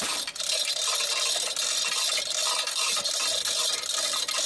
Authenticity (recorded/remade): recorded